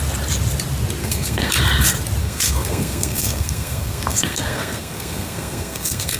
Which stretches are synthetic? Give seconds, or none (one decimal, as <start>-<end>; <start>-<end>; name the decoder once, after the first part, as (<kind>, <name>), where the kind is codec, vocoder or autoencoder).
1.0-1.5 (codec, SNAC); 2.2-6.2